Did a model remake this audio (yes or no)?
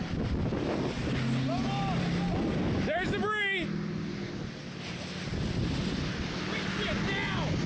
no